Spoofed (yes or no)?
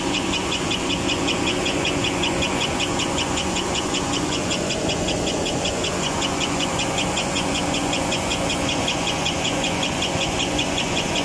yes